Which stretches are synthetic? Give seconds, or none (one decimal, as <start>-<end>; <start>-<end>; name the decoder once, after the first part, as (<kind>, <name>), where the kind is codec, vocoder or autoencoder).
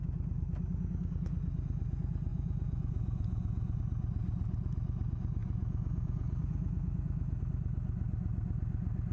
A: 2.3-3.8 (vocoder, Vocos); 5.4-7.4